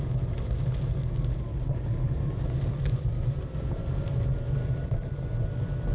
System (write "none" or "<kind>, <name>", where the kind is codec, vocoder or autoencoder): none